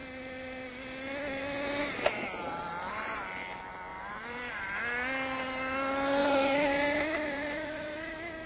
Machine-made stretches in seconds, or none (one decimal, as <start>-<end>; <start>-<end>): 0.0-0.7; 3.9-4.8; 6.2-8.1